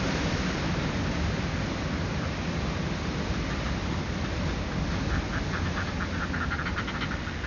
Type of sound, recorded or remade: recorded